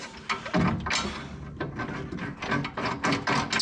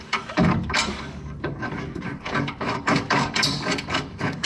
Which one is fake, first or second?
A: second